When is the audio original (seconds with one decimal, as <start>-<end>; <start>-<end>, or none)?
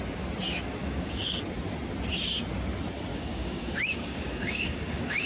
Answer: 0.0-0.8; 1.4-3.1